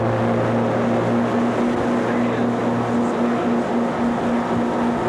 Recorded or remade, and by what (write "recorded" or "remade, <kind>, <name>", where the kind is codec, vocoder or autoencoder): recorded